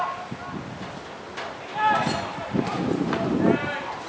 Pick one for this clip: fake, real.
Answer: real